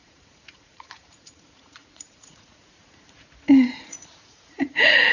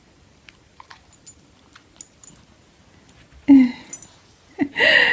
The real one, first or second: second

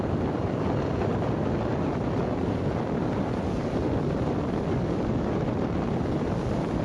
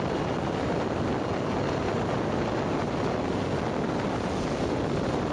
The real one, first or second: second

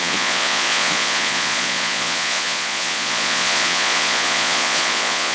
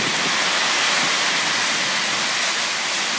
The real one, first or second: second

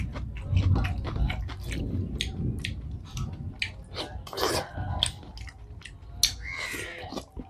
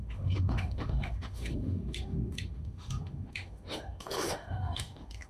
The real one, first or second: first